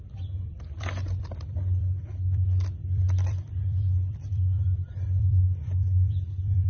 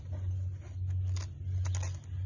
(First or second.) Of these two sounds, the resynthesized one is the first